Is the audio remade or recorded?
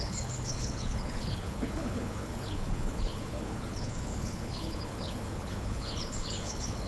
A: remade